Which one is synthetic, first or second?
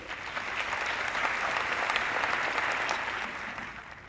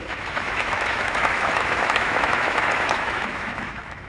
second